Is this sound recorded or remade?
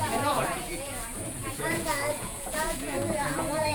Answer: remade